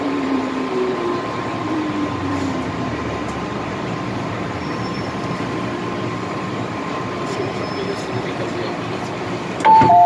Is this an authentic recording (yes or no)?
no